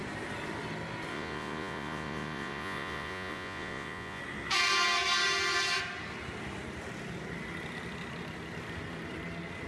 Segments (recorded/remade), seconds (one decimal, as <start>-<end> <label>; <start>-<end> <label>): 0.0-1.1 recorded; 1.1-4.2 remade; 4.2-9.7 recorded

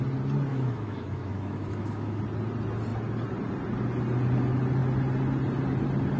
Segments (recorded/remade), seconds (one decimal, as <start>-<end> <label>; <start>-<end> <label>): 0.0-0.5 recorded; 0.5-2.2 remade; 2.2-6.2 recorded

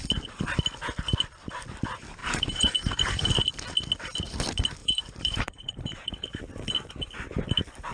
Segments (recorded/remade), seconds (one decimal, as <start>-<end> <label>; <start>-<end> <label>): 0.0-2.2 recorded; 2.2-3.3 remade; 3.3-4.8 recorded; 4.8-6.4 remade; 6.4-7.9 recorded

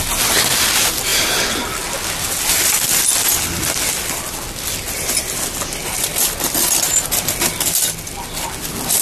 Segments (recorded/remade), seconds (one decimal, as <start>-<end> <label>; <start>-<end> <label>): 0.0-9.0 recorded

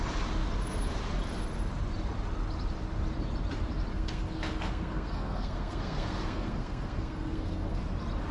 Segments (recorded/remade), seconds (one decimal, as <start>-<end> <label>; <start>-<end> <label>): 0.0-3.9 recorded; 3.9-7.8 remade; 7.8-8.3 recorded

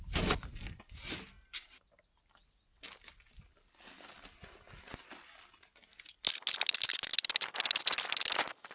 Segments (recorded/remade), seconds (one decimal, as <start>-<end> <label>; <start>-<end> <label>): 0.0-8.7 recorded

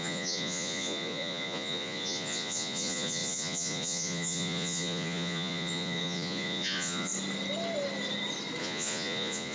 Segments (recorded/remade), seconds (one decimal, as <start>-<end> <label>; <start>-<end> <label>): 0.0-7.1 remade; 7.1-8.6 recorded; 8.6-9.5 remade